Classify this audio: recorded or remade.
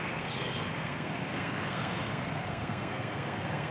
remade